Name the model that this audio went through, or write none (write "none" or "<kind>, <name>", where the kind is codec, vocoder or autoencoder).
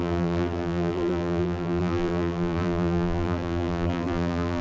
vocoder, BigVGAN v2